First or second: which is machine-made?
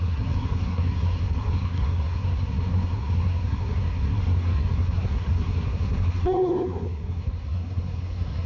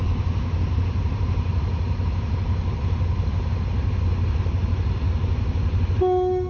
first